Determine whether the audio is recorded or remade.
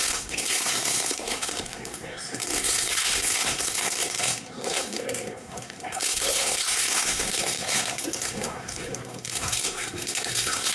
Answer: remade